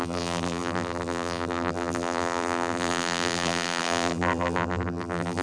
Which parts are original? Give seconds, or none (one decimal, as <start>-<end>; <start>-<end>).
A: none